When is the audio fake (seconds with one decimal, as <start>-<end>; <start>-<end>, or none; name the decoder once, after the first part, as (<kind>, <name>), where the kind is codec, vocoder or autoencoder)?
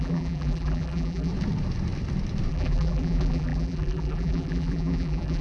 0.0-1.3 (vocoder, BigVGAN v2); 2.5-5.4